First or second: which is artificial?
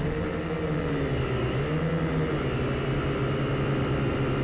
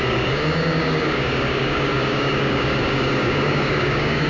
second